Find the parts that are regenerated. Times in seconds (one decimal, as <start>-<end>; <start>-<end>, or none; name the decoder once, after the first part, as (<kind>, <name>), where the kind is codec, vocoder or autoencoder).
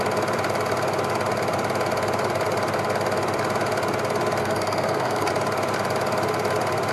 4.4-5.3 (codec, SNAC)